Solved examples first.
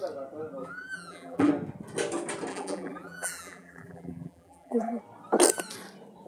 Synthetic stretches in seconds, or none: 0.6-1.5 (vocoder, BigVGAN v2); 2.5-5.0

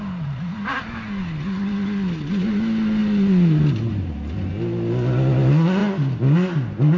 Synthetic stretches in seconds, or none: none

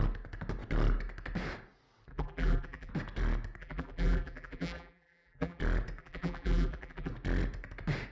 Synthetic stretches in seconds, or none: 2.1-2.9 (vocoder, BigVGAN v2); 3.6-5.6; 6.0-7.1

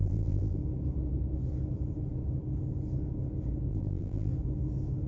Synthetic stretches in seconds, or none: 0.0-0.6 (vocoder, BigVGAN v2); 3.7-4.3

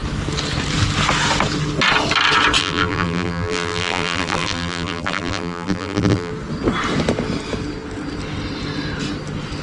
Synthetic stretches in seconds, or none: 2.6-6.3 (vocoder, BigVGAN v2)

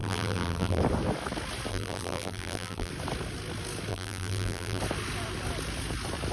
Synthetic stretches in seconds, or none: 0.0-0.8 (vocoder, BigVGAN v2); 1.7-2.9; 3.9-4.8